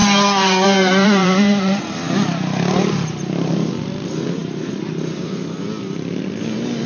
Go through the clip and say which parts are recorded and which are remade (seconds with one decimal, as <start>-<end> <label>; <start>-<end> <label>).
0.0-1.8 remade; 1.8-4.4 recorded; 4.4-5.4 remade; 5.4-6.9 recorded